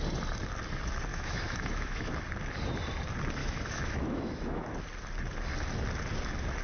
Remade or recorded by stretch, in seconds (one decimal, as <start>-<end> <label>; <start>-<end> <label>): 0.0-1.1 recorded; 1.1-2.1 remade; 2.1-3.4 recorded; 3.4-4.7 remade; 4.7-6.6 recorded